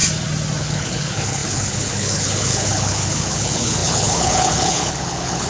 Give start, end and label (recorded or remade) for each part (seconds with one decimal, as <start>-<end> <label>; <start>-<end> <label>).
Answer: 0.0-0.6 recorded; 0.6-5.5 remade